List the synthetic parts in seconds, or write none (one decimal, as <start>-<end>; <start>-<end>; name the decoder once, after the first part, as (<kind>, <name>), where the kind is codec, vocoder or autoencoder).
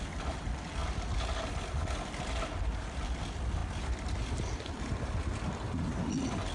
none